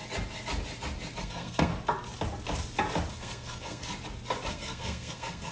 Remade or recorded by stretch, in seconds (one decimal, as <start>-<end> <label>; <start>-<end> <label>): 0.0-1.2 recorded; 1.2-1.7 remade; 1.7-3.1 recorded; 3.1-3.8 remade; 3.8-4.5 recorded; 4.5-5.5 remade